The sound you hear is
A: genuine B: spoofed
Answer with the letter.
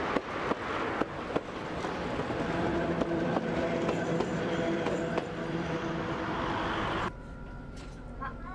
B